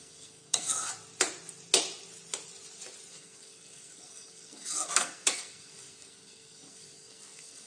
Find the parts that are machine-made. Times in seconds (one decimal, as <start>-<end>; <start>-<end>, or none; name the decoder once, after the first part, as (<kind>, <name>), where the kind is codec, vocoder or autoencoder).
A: 0.0-0.9 (codec, SNAC); 3.1-7.7